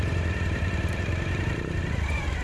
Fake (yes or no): yes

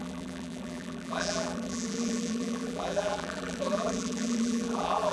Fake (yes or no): yes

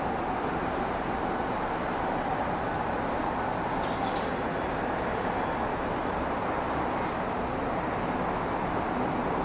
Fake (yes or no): no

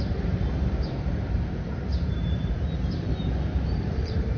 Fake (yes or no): yes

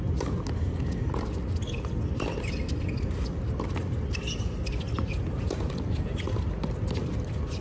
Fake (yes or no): no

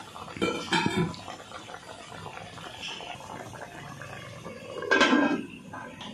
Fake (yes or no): no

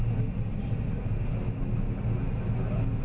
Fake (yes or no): no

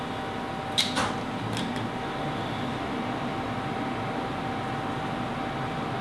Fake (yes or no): no